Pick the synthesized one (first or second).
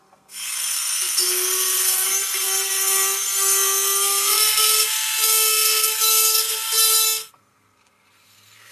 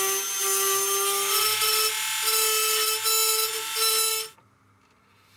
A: first